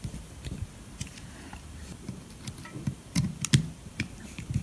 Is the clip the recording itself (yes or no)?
no